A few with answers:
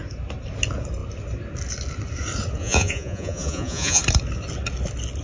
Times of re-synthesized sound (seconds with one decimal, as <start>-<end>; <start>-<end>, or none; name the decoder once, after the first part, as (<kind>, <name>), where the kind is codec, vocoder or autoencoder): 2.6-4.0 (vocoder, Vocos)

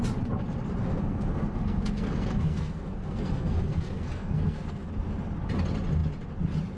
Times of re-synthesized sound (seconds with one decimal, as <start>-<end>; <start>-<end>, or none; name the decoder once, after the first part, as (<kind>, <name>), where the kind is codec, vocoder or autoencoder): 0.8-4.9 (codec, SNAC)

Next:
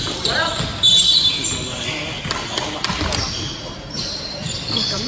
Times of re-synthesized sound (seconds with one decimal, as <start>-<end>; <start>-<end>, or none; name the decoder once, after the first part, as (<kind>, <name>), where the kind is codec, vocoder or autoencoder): 0.0-0.5 (vocoder, BigVGAN v2); 3.6-5.1

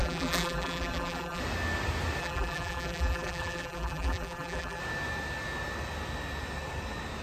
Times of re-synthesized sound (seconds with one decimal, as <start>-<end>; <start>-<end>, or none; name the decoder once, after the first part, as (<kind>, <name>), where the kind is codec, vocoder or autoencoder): 0.0-1.4 (vocoder, BigVGAN v2); 2.2-4.8

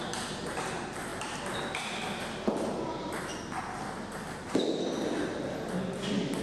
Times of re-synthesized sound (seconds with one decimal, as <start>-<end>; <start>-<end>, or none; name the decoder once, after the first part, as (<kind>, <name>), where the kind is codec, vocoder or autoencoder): 0.0-0.6 (vocoder, BigVGAN v2)